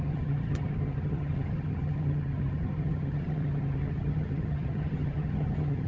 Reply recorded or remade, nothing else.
remade